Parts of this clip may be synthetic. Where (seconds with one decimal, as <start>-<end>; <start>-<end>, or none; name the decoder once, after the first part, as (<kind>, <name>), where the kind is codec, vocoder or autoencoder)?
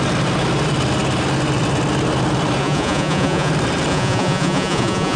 2.6-3.5 (vocoder, Vocos); 3.9-5.2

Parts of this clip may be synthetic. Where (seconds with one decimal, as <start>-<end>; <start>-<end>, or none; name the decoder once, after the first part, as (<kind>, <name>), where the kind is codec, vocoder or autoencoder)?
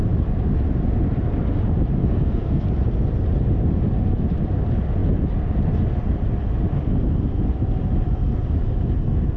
2.0-2.7 (codec, SNAC)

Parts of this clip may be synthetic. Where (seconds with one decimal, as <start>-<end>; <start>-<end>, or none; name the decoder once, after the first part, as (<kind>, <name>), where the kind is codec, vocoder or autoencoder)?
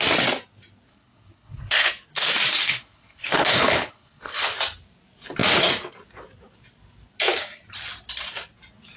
0.9-1.9 (codec, HILCodec); 2.6-4.5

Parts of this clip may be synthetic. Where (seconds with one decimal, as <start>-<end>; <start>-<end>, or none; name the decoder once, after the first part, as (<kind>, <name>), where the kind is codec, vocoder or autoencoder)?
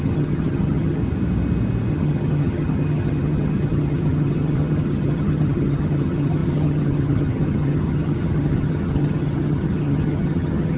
0.0-1.0 (vocoder, HiFi-GAN); 1.9-10.8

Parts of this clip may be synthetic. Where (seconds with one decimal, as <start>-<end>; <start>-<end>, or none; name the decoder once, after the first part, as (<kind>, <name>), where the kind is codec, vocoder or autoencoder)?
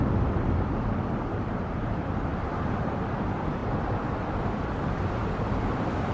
0.0-2.3 (vocoder, BigVGAN v2); 2.8-5.2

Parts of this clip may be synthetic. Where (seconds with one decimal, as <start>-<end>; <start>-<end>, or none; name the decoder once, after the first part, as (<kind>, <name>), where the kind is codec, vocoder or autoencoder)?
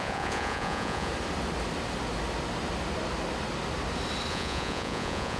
0.0-1.1 (vocoder, Vocos); 4.3-5.4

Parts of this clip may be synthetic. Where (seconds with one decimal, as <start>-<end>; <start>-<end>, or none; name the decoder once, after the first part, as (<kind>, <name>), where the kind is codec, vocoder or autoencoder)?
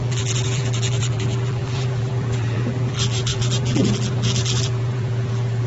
0.0-5.7 (vocoder, BigVGAN v2)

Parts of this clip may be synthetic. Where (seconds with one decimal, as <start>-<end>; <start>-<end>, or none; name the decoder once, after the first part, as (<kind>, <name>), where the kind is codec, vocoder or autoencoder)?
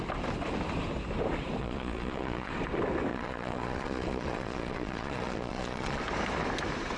1.6-2.5 (vocoder, Vocos); 3.1-6.0